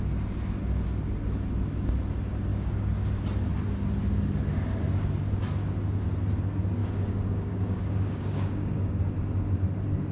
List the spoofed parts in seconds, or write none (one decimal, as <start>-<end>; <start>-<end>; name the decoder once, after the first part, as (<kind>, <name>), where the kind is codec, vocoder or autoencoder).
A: 2.5-3.1 (codec, DAC); 6.8-9.1